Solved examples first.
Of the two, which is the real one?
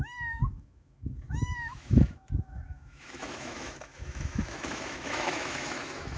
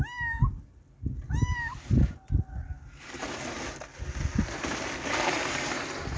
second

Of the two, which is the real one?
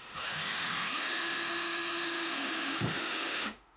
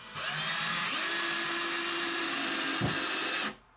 second